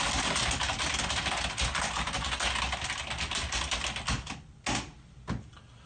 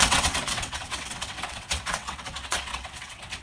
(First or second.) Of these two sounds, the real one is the first